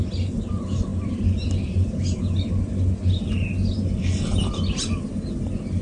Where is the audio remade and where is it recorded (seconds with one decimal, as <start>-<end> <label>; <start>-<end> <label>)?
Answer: 0.0-5.8 recorded